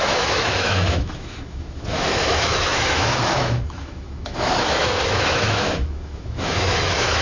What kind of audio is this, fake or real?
fake